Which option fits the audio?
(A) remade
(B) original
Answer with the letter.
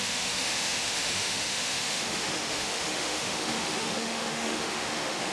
A